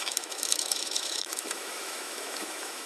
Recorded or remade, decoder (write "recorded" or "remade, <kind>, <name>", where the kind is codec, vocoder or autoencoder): remade, autoencoder, DAC-VAE